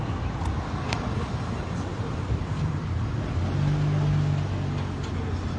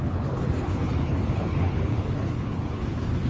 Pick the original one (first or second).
first